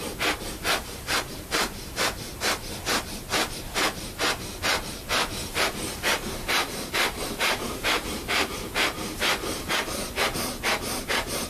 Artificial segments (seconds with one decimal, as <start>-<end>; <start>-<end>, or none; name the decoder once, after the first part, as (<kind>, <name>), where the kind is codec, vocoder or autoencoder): 4.7-9.8 (vocoder, BigVGAN v2)